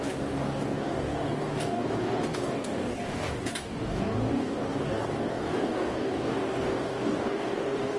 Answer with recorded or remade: remade